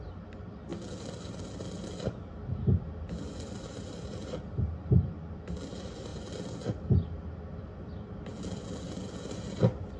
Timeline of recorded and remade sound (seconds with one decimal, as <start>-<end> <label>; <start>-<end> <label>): 0.0-10.0 recorded